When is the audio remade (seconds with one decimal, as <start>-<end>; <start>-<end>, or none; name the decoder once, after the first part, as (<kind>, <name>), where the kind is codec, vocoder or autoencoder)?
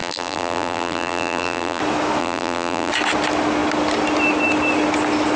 0.0-1.8 (vocoder, BigVGAN v2); 2.2-2.9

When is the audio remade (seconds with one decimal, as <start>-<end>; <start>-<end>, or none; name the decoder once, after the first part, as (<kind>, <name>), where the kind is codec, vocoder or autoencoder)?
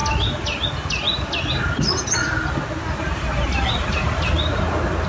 none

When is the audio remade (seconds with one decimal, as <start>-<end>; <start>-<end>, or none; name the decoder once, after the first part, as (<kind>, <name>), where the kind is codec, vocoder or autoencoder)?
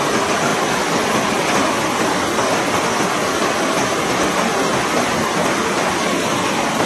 none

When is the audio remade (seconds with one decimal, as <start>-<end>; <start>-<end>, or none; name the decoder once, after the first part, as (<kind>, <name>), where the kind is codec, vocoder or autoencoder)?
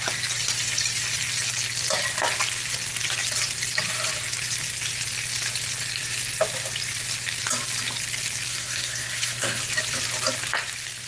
8.5-9.6 (codec, SNAC)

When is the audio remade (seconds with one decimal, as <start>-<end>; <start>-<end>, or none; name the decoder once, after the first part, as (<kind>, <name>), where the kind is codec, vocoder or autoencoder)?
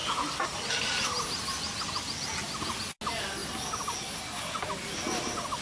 0.0-2.3 (vocoder, BigVGAN v2)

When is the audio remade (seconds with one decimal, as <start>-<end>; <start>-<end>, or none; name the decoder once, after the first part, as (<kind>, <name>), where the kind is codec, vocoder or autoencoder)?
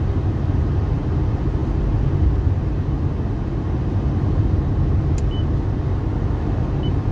none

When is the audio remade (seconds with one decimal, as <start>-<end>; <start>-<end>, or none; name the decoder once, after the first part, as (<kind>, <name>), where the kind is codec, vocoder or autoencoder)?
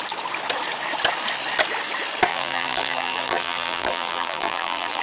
2.3-5.0 (vocoder, BigVGAN v2)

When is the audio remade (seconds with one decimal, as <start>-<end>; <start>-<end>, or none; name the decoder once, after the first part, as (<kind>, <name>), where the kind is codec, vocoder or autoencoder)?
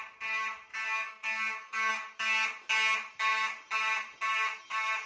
0.7-1.9 (codec, DAC)